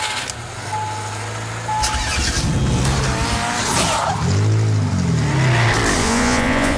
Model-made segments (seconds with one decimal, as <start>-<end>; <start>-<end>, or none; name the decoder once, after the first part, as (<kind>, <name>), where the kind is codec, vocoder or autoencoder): 6.0-6.8 (vocoder, Vocos)